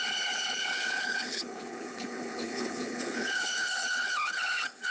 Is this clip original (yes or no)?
no